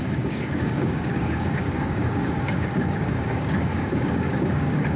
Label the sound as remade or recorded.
remade